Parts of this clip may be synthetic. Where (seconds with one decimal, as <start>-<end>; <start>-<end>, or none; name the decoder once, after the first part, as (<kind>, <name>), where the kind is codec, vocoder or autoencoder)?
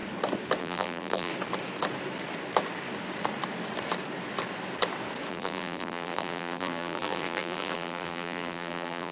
0.6-1.3 (vocoder, BigVGAN v2); 5.3-9.1